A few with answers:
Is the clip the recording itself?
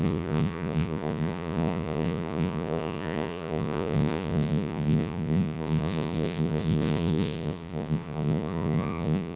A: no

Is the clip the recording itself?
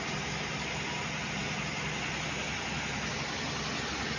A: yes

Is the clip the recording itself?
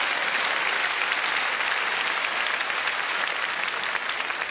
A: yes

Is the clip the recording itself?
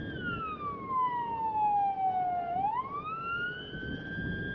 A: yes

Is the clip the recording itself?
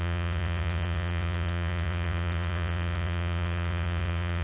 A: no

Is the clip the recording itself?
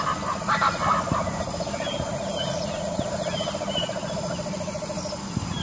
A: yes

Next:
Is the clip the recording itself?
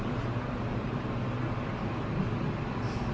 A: yes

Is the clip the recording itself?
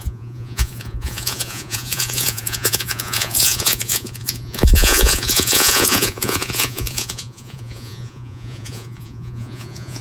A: no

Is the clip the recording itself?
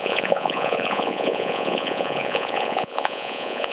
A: no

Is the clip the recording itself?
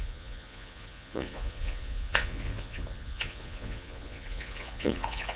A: no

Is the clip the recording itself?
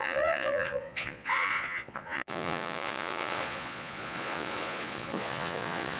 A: no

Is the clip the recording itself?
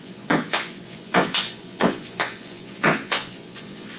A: no